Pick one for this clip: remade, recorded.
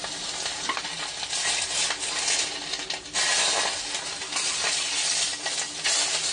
recorded